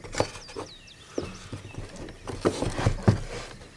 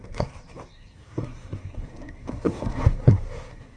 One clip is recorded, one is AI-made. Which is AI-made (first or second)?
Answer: second